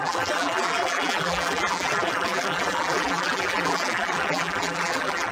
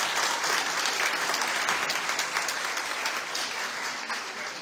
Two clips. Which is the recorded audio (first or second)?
second